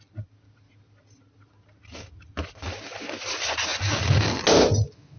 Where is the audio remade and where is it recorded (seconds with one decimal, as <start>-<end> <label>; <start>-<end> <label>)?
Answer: 0.0-5.2 recorded